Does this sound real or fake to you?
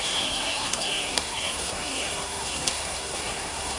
fake